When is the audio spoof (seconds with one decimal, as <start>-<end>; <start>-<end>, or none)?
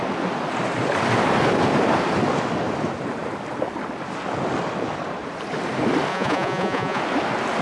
6.1-7.0